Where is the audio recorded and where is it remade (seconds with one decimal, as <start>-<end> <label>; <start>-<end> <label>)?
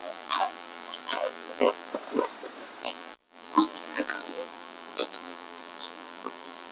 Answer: 0.0-1.9 remade; 1.9-2.8 recorded; 2.8-6.7 remade